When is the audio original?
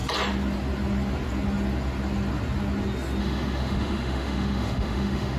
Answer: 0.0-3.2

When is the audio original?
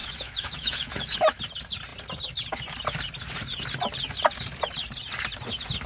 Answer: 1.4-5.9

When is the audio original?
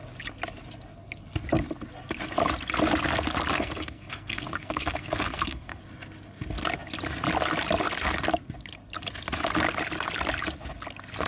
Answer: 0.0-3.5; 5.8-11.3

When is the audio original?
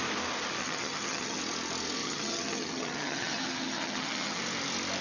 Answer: 0.0-0.6; 1.4-2.0; 4.4-5.0